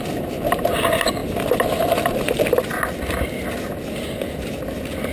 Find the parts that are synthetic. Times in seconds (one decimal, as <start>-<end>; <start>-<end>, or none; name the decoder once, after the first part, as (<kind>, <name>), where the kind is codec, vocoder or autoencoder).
none